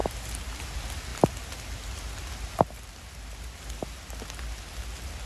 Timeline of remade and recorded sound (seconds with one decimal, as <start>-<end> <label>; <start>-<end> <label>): 0.0-5.3 recorded